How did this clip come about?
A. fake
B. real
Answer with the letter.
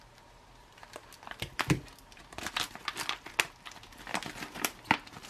B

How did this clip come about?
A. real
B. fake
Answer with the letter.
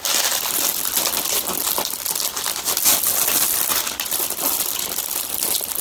A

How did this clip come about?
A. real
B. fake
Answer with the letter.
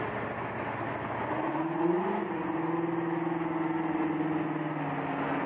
A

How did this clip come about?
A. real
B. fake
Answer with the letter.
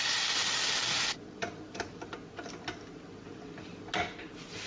A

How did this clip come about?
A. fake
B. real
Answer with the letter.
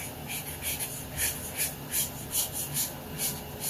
B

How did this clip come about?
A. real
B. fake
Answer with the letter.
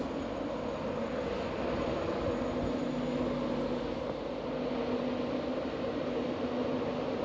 A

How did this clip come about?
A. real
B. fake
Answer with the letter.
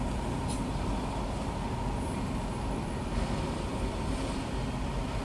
A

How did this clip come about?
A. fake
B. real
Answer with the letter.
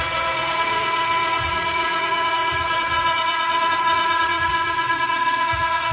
A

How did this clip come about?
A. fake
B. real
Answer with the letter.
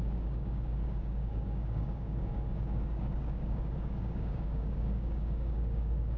A